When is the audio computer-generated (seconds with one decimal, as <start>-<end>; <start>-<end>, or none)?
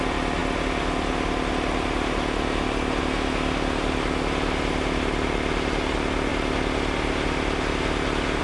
none